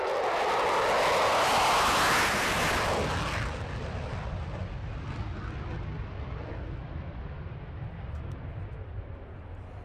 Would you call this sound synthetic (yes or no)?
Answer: no